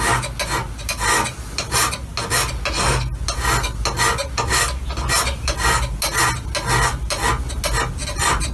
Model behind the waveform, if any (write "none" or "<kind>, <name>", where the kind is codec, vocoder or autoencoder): none